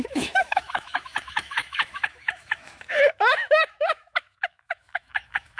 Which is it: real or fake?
fake